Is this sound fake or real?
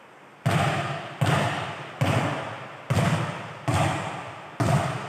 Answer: real